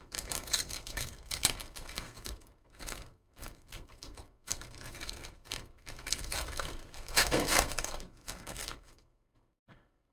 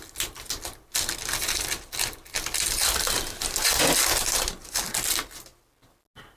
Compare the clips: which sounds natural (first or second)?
second